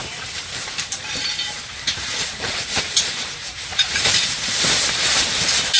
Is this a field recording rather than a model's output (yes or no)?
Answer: no